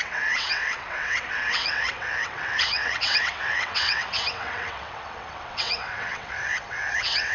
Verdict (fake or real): fake